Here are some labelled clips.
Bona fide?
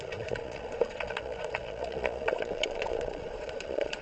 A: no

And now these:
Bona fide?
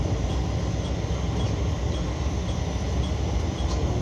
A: yes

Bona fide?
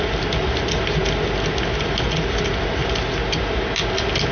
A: yes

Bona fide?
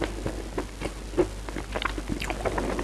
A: yes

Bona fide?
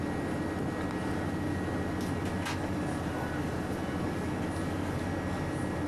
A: yes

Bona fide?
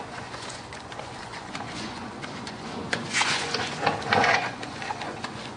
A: no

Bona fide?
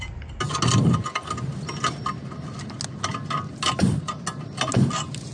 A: yes